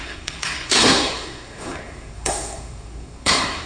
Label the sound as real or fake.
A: fake